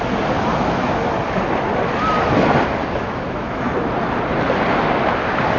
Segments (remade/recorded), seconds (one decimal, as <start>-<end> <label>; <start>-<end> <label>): 0.0-0.5 recorded; 0.5-1.1 remade; 1.1-2.8 recorded; 2.8-3.7 remade; 3.7-5.6 recorded